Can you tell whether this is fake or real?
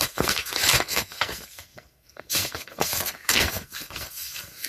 fake